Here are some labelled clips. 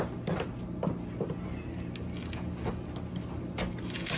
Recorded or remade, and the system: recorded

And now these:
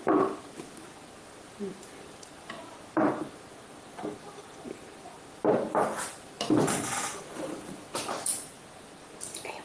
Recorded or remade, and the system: recorded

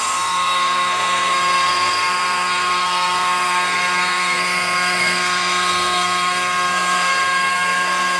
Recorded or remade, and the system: remade, codec, SNAC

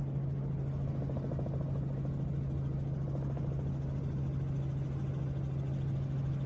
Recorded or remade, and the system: recorded